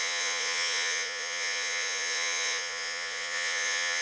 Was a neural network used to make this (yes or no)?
yes